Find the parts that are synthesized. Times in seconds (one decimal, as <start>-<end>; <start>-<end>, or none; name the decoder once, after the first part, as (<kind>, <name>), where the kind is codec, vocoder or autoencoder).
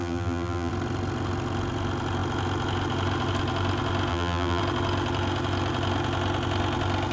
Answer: 0.0-0.7 (vocoder, BigVGAN v2); 4.1-4.6